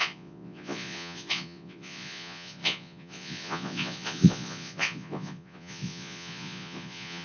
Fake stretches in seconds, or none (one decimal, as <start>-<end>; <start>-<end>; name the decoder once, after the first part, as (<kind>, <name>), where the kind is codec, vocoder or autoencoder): 0.0-7.2 (vocoder, Vocos)